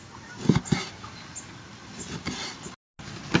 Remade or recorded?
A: recorded